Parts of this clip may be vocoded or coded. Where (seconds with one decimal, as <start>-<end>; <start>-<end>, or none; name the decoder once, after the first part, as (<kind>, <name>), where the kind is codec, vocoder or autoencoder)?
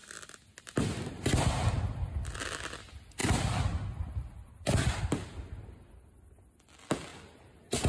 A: 7.1-7.9 (vocoder, BigVGAN v2)